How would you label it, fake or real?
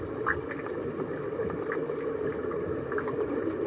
real